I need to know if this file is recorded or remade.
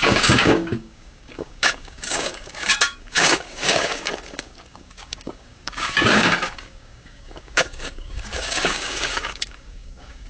remade